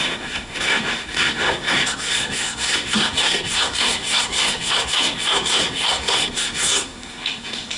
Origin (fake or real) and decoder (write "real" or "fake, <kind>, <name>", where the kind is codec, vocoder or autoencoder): fake, codec, SNAC